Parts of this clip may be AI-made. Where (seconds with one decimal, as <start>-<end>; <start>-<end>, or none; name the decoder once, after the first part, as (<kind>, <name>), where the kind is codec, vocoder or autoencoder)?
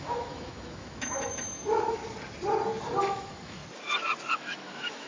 0.0-2.0 (autoencoder, DAC-VAE); 3.0-3.6; 4.3-5.1